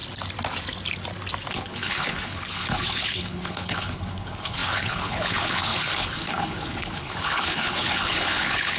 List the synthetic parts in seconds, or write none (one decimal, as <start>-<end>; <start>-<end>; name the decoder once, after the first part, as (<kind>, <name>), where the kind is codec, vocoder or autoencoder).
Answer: 1.5-8.8 (codec, HILCodec)